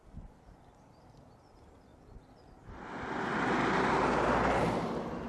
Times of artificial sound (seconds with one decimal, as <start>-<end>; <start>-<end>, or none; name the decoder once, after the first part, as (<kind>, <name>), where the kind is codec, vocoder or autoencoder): none

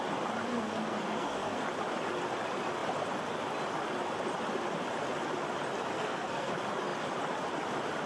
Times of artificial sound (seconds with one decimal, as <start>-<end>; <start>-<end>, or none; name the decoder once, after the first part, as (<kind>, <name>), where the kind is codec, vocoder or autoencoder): 0.5-1.6 (codec, SNAC); 5.9-6.5

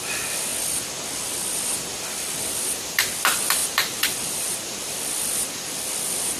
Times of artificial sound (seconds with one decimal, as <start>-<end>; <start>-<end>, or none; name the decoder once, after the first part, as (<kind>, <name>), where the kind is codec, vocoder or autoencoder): 0.0-0.5 (vocoder, BigVGAN v2); 2.4-6.4

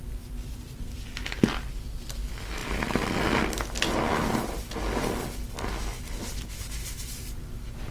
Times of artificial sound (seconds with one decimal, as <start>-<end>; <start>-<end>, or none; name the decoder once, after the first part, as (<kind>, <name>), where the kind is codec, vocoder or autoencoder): 0.0-1.1 (vocoder, BigVGAN v2)